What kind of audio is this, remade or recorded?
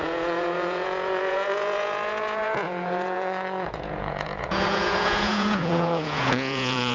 remade